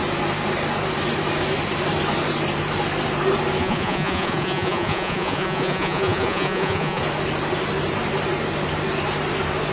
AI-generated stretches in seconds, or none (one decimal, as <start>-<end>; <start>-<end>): 3.6-7.0